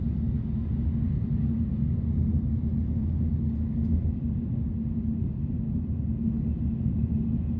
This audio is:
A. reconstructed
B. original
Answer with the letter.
B